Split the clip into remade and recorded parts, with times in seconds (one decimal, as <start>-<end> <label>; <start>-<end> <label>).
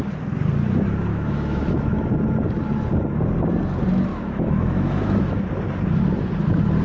0.0-1.1 recorded; 1.1-2.0 remade; 2.0-4.1 recorded; 4.1-5.3 remade; 5.3-6.8 recorded